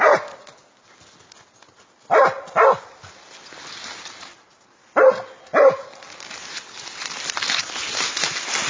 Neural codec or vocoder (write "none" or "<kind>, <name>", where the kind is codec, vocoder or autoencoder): none